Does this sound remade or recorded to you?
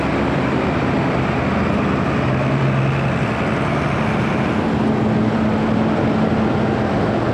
recorded